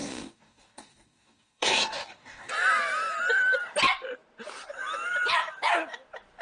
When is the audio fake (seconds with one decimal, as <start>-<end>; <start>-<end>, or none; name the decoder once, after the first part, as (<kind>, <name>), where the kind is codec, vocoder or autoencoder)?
0.0-2.5 (codec, DAC)